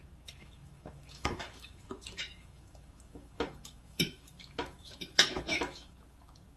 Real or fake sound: fake